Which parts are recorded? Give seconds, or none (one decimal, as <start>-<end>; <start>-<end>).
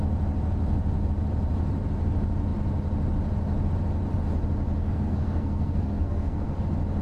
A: 0.0-4.8; 6.6-7.0